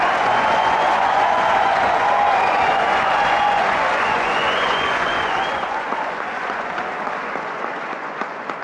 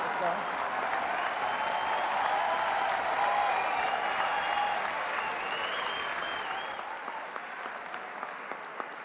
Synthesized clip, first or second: first